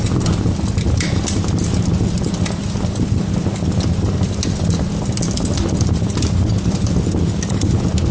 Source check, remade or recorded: recorded